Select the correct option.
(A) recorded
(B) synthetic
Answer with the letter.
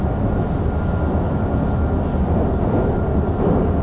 A